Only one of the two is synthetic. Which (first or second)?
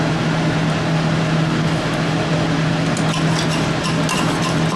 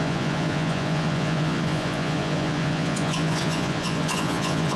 second